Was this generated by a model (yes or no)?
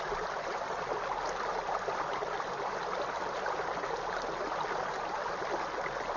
no